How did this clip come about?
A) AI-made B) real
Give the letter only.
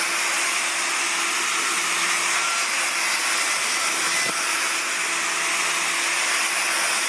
B